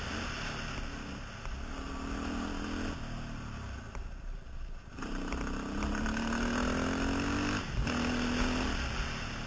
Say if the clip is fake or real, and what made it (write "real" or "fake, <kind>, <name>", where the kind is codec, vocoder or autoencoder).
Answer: real